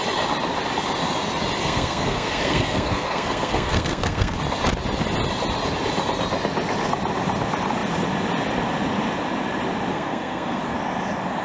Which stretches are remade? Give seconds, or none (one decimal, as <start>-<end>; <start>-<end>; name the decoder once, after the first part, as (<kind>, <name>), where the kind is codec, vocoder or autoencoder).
1.6-4.4 (codec, SNAC); 9.9-10.6